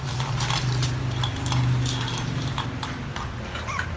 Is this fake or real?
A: real